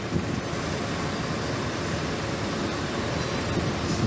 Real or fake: real